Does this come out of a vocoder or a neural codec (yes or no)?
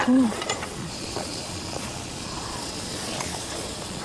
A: yes